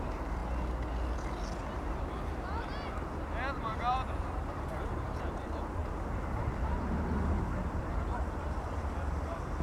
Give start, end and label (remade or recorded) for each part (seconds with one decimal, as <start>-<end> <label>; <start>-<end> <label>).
0.0-0.4 remade; 0.4-2.0 recorded; 2.0-5.8 remade; 5.8-7.7 recorded; 7.7-9.6 remade